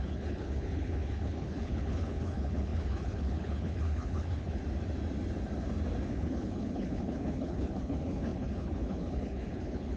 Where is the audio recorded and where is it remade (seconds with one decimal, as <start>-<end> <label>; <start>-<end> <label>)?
0.0-4.6 remade; 4.6-6.1 recorded; 6.1-10.0 remade